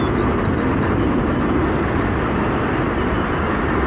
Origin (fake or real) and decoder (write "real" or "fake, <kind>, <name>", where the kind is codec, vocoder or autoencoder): real